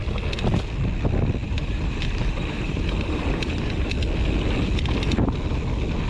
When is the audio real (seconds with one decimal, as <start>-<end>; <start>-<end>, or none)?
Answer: 0.0-1.4; 3.9-6.1